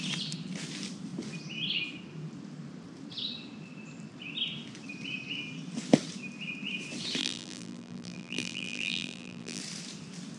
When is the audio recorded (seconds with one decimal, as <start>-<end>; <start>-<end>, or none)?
0.0-7.2; 9.6-10.4

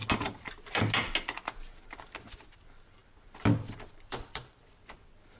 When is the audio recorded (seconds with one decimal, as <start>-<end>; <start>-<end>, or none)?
0.0-3.0; 4.6-5.4